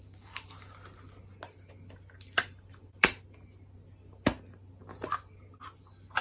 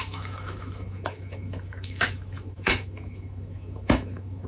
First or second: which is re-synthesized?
second